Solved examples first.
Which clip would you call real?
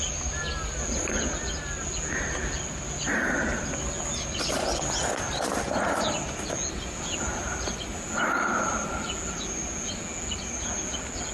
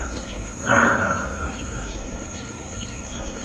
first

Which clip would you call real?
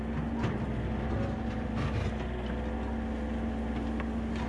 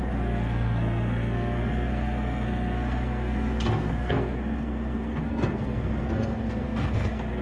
first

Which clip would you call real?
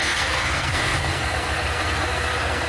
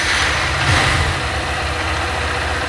second